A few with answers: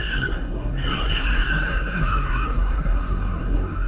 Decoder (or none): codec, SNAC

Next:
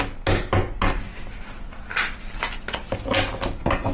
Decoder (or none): none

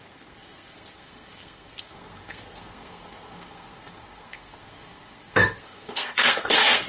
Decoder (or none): codec, SNAC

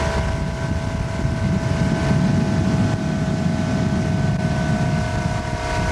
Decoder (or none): none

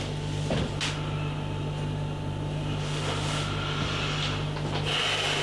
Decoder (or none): none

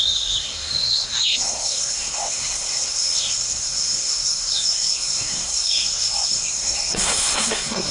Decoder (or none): codec, SNAC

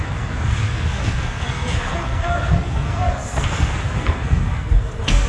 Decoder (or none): codec, SNAC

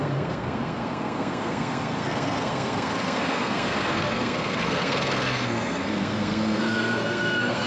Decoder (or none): codec, SNAC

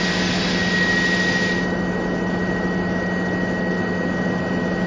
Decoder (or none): none